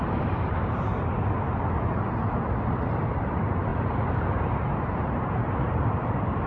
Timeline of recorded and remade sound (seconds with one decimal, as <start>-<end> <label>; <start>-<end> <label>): 0.0-0.9 remade; 0.9-2.7 recorded; 2.7-6.5 remade

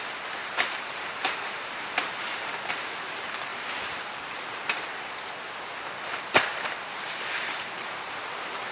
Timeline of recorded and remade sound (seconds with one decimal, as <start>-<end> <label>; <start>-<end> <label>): 0.0-0.4 recorded; 0.4-2.7 remade; 2.7-3.5 recorded; 3.5-4.8 remade; 4.8-6.5 recorded; 6.5-8.7 remade

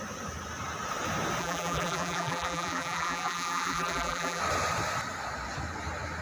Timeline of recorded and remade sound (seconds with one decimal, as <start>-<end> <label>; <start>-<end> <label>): 0.0-1.4 recorded; 1.4-4.4 remade; 4.4-6.2 recorded